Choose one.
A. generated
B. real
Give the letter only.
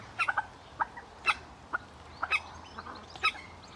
B